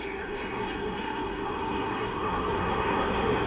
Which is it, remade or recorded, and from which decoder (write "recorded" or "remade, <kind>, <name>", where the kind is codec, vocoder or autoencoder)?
remade, codec, SNAC